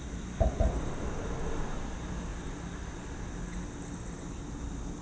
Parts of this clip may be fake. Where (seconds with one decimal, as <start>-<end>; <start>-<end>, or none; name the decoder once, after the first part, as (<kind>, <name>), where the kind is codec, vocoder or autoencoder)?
none